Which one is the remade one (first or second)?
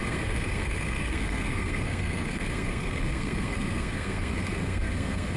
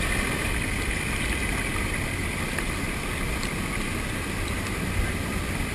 first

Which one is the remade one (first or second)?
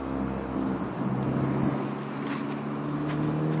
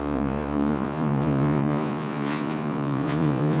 second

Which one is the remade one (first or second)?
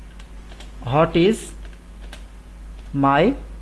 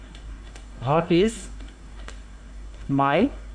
second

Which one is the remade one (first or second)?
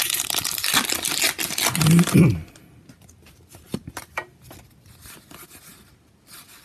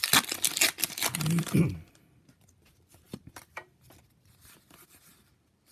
second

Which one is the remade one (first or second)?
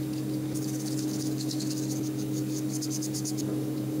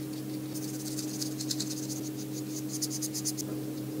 first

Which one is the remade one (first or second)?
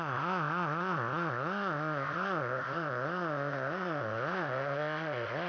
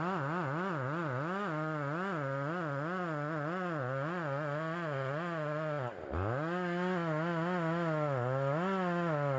first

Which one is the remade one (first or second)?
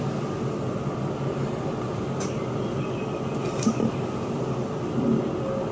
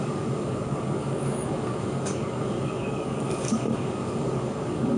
second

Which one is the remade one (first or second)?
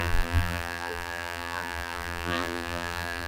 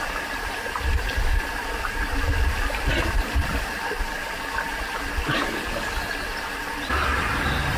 first